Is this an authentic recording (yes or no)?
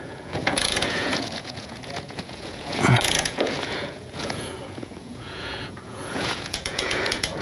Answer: no